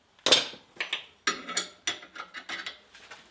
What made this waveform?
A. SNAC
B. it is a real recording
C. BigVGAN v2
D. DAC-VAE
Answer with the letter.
B